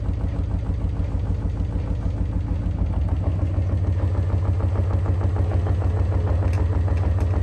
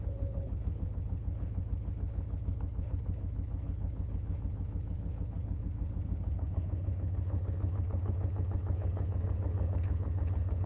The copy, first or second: second